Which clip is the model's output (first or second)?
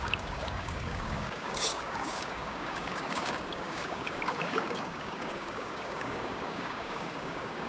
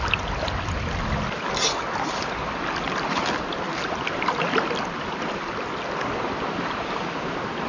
first